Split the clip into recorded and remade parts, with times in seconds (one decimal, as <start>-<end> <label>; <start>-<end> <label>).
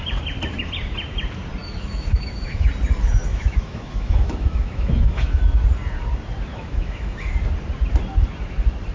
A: 0.0-1.6 recorded; 1.6-2.7 remade; 2.7-3.3 recorded; 3.3-5.4 remade; 5.4-6.5 recorded; 6.5-7.3 remade; 7.3-8.9 recorded